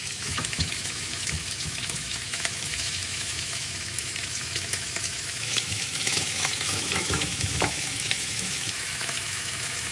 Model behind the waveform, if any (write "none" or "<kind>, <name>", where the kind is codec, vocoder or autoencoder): autoencoder, DAC-VAE